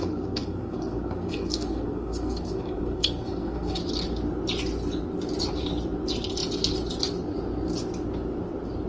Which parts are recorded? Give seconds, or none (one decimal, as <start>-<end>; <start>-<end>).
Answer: 3.8-8.9